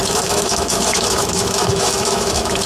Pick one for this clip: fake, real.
fake